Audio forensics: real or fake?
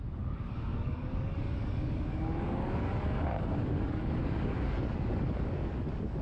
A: fake